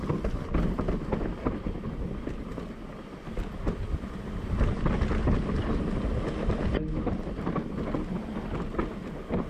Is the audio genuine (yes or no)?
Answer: yes